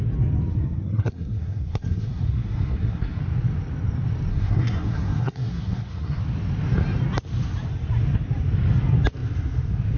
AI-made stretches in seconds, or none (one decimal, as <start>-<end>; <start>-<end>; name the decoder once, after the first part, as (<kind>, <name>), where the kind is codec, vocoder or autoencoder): 0.5-3.2 (codec, SNAC); 4.3-6.2